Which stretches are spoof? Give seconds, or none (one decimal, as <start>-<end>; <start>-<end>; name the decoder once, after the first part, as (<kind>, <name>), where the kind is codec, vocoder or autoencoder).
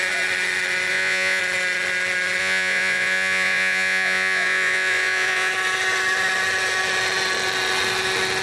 0.9-1.4 (vocoder, Vocos); 2.4-5.5